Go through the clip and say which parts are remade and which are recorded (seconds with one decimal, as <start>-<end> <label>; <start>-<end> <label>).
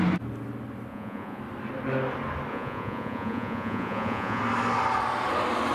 0.0-0.9 recorded; 0.9-1.4 remade; 1.4-2.5 recorded; 2.5-4.4 remade; 4.4-5.7 recorded